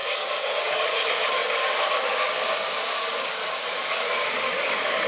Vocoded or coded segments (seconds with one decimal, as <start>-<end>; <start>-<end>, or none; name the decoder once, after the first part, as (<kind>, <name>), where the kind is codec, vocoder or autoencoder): 0.0-3.4 (codec, DAC); 3.9-5.1